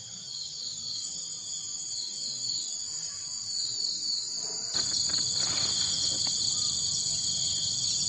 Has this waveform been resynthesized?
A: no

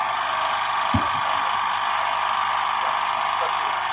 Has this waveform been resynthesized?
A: yes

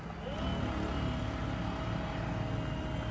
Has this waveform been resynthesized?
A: no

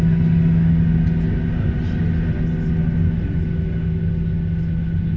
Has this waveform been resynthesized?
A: no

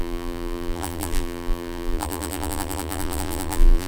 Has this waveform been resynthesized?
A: yes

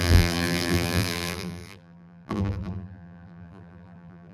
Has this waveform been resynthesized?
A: yes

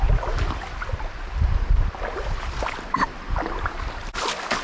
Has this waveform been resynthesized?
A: no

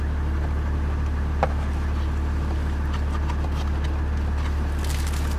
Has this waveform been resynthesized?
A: no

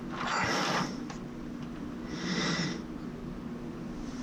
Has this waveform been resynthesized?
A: no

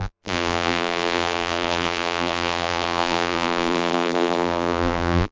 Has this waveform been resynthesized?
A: yes